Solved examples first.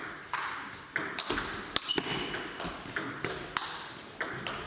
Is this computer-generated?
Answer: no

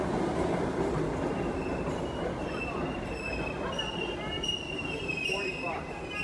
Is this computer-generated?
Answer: no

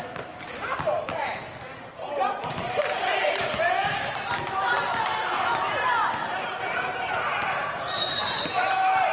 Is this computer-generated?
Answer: yes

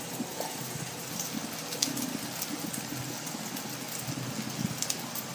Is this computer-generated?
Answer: no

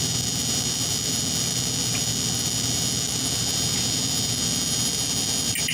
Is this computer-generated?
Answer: yes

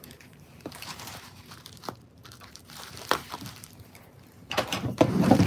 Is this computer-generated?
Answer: yes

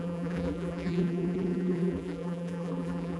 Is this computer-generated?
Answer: yes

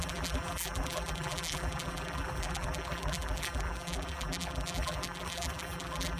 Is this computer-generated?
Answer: yes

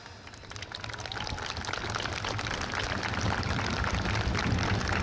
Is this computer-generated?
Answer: no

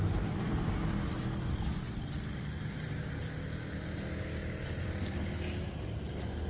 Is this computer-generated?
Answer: no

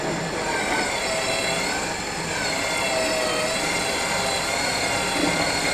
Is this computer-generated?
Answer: no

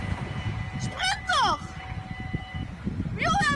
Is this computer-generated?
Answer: no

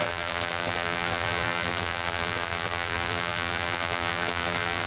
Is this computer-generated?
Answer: yes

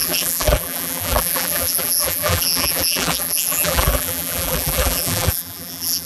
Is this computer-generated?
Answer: yes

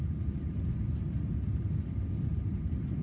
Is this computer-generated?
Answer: no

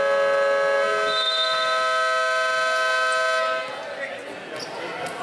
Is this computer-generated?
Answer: no